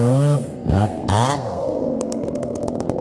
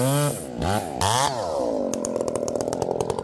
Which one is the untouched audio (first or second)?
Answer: second